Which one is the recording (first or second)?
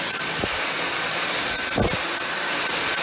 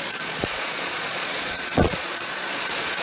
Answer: first